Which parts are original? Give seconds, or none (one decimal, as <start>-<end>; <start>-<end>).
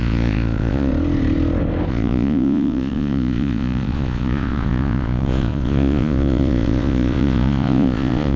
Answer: 0.9-1.9